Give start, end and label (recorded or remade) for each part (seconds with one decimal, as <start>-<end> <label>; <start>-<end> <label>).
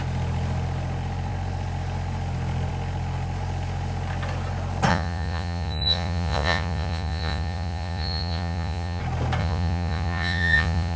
0.0-4.9 recorded; 4.9-9.0 remade; 9.0-9.4 recorded; 9.4-11.0 remade